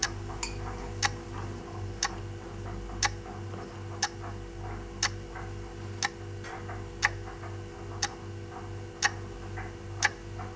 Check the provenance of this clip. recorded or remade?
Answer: recorded